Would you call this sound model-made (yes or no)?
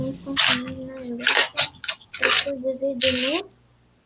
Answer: no